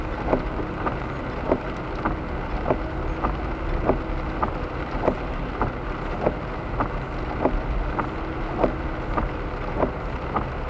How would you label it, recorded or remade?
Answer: recorded